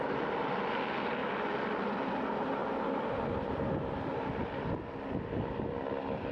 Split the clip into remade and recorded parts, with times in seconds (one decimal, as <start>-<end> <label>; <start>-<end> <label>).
0.0-6.3 recorded